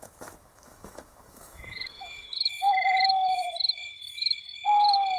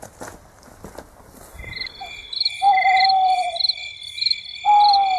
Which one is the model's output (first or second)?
first